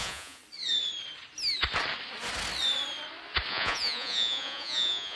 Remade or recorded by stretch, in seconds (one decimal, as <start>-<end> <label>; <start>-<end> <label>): 0.0-0.4 remade; 0.4-3.5 recorded; 3.5-5.2 remade

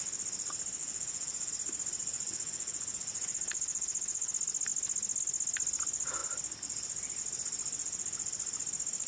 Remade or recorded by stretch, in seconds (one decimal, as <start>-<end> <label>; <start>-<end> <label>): 0.0-0.8 recorded; 0.8-1.5 remade; 1.5-2.0 recorded; 2.0-4.3 remade; 4.3-9.1 recorded

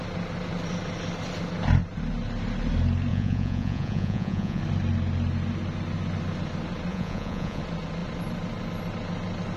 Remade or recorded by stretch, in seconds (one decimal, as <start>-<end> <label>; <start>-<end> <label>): 0.0-3.1 recorded; 3.1-4.6 remade; 4.6-6.9 recorded; 6.9-7.6 remade; 7.6-9.6 recorded

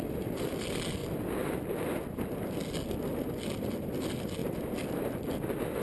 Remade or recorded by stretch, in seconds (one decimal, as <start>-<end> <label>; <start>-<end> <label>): 0.0-5.8 recorded

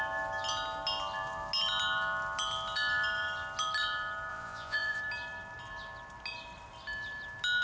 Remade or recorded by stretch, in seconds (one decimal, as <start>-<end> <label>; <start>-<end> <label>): 0.0-4.3 recorded; 4.3-5.0 remade; 5.0-7.6 recorded

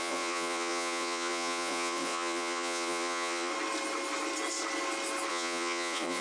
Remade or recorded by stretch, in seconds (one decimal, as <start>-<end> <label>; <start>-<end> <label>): 0.0-3.5 remade; 3.5-5.3 recorded; 5.3-6.2 remade

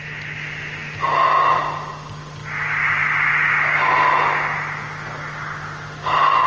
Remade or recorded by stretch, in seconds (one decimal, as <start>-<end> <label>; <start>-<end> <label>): 0.0-6.5 recorded

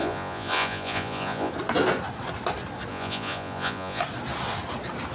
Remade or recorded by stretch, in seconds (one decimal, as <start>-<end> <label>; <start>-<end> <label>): 0.0-1.5 remade; 1.5-2.9 recorded; 2.9-4.0 remade; 4.0-5.1 recorded